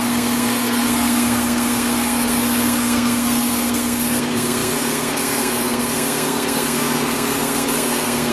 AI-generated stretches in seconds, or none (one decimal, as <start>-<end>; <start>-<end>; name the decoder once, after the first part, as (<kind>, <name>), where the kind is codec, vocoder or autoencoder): 0.0-8.3 (codec, SNAC)